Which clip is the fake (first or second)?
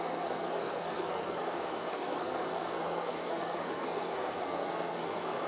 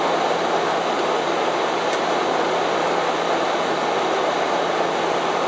first